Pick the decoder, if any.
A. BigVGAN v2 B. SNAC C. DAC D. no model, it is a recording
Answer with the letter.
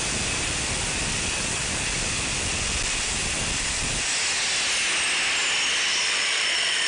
D